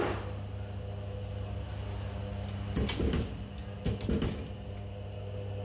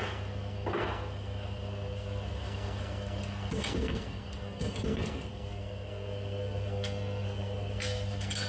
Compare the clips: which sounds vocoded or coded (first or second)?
second